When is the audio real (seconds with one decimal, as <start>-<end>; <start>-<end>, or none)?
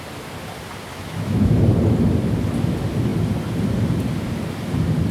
0.0-0.9; 1.6-5.1